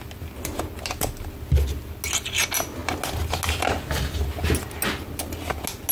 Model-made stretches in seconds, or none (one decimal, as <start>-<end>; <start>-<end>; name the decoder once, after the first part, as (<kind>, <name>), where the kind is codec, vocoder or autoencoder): none